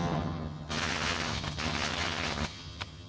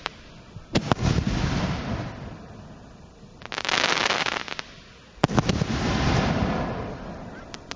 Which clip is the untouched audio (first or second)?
second